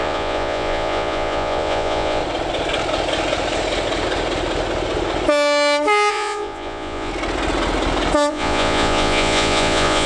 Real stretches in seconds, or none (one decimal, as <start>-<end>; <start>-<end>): 2.2-6.1; 7.1-8.3